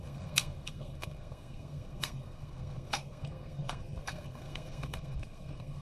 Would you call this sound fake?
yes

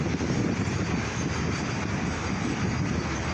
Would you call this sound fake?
no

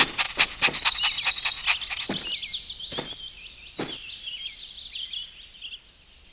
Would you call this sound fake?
no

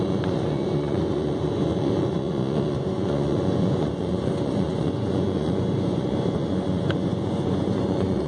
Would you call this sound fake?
yes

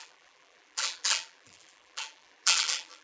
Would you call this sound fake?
yes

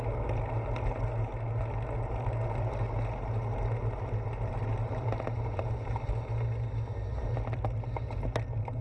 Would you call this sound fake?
no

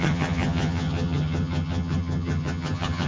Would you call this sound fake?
yes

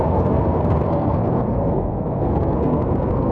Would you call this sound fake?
yes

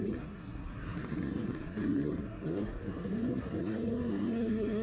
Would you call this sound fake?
yes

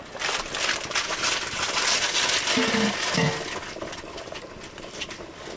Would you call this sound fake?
no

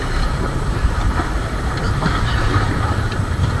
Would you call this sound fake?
yes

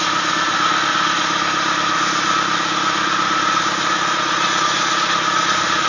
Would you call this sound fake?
no